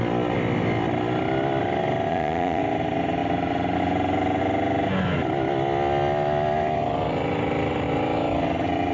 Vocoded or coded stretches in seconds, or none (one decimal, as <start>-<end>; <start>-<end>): 2.1-2.6